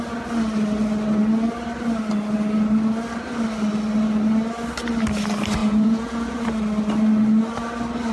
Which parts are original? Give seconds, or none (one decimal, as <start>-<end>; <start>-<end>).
0.0-5.6; 6.4-8.1